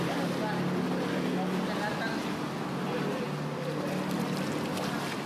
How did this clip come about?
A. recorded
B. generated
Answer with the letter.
A